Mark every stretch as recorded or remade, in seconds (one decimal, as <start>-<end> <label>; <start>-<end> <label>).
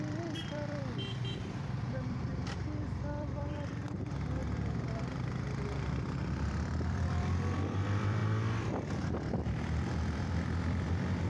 0.0-2.3 remade; 2.3-2.9 recorded; 2.9-8.2 remade; 8.2-9.4 recorded; 9.4-11.3 remade